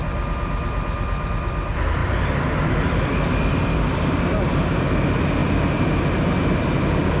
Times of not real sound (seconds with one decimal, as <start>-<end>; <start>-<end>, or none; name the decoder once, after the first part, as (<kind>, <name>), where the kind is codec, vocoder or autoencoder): 2.0-4.7 (vocoder, BigVGAN v2); 5.4-6.0